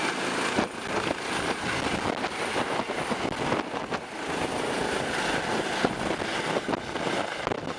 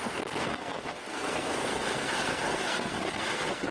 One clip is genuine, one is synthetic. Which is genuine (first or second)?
first